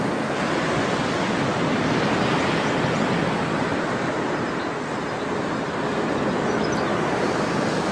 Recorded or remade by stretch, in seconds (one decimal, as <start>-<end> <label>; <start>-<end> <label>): 0.0-7.9 recorded